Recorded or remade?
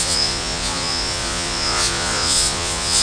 remade